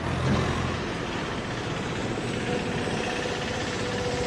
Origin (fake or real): real